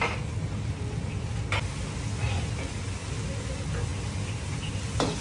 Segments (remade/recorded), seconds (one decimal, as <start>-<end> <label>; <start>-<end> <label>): 0.0-5.2 recorded